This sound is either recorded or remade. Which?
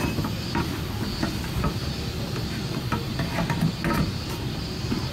recorded